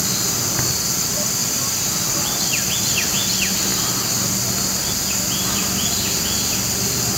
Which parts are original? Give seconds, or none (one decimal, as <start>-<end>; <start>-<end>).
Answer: 0.0-1.4; 1.9-7.2